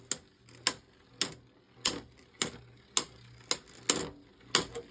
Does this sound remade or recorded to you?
recorded